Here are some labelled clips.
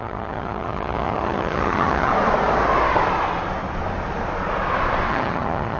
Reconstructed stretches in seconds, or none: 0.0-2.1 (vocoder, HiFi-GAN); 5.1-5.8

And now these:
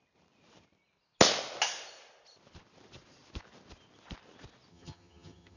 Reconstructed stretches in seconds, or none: 4.7-5.6 (vocoder, HiFi-GAN)